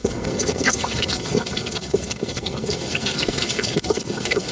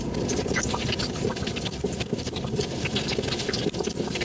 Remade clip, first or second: first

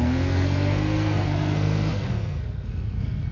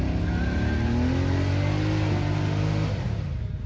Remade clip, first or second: first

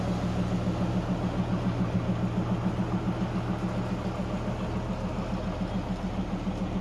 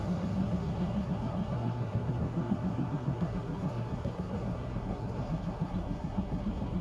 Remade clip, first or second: second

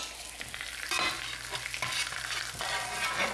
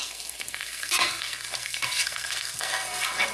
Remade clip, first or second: second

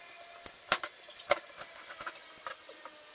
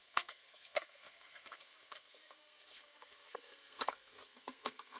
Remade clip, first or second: second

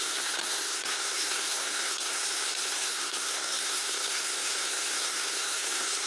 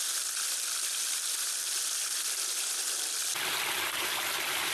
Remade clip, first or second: first